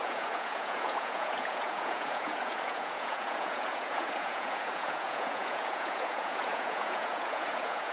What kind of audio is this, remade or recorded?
remade